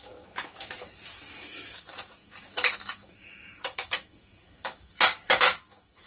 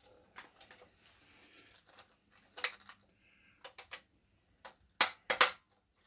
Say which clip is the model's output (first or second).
first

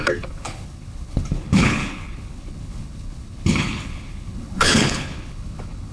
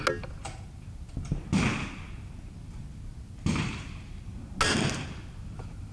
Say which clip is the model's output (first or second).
first